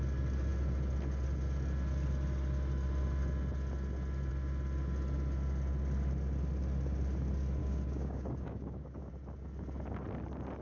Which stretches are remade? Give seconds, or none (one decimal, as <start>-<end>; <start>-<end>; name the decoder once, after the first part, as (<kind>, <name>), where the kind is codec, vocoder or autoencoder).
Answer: 7.6-9.1 (codec, DAC)